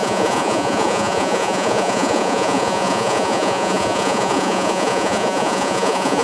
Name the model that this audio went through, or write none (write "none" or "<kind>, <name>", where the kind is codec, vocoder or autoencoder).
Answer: vocoder, Vocos